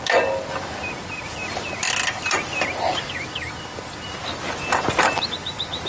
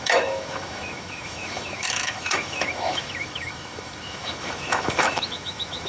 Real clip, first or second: first